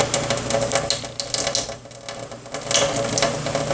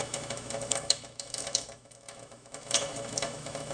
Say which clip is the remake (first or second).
second